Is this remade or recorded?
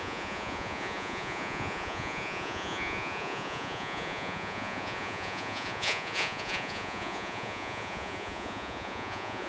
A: remade